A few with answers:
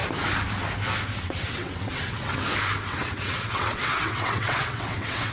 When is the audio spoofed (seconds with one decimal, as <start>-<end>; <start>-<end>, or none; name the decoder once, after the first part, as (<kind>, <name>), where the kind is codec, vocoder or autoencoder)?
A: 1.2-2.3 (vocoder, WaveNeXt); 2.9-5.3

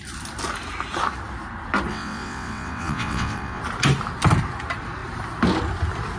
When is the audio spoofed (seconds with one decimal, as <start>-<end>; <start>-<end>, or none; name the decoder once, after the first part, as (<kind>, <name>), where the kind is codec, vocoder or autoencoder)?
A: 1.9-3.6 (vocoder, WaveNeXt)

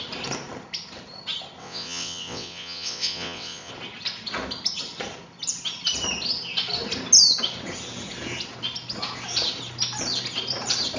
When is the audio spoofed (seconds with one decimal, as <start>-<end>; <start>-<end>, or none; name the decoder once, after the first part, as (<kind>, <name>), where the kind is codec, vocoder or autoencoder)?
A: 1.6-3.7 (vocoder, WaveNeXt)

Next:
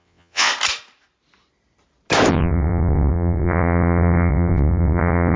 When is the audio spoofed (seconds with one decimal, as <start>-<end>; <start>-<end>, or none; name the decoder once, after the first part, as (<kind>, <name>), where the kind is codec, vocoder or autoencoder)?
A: 0.0-0.5 (vocoder, WaveNeXt); 2.3-5.4

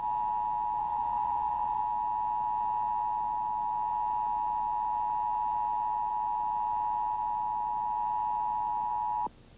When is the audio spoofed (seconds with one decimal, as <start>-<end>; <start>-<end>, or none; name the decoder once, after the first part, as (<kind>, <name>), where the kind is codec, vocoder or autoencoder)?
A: 0.8-1.8 (vocoder, WaveNeXt)